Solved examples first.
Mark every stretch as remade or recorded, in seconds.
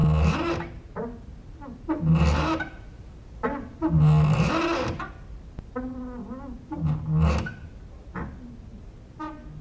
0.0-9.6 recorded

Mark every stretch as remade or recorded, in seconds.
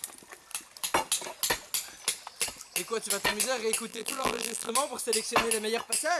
0.0-3.9 recorded; 3.9-4.7 remade; 4.7-6.2 recorded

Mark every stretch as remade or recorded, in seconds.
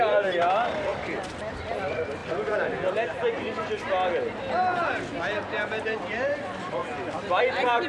0.0-2.2 remade; 2.2-5.8 recorded; 5.8-6.8 remade; 6.8-7.4 recorded; 7.4-7.9 remade